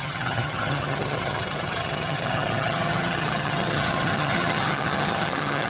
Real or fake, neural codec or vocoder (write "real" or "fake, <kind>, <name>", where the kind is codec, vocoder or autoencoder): fake, vocoder, HiFi-GAN